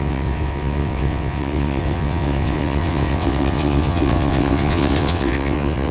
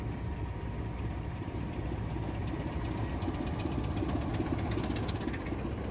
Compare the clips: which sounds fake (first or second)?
first